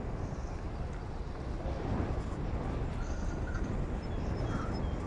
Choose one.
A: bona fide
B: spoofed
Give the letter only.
A